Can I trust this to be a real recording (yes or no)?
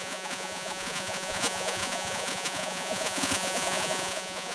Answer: no